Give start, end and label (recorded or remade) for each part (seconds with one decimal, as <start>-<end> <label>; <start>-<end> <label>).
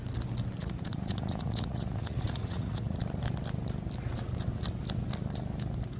0.0-0.6 recorded; 0.6-3.0 remade; 3.0-6.0 recorded